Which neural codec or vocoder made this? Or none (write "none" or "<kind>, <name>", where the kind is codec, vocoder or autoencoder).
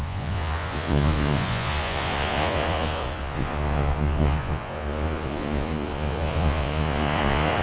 vocoder, Vocos